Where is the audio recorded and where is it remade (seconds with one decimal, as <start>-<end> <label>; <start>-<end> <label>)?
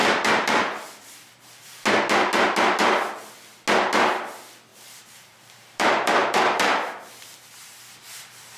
0.0-1.3 remade; 1.3-4.7 recorded; 4.7-7.1 remade; 7.1-8.6 recorded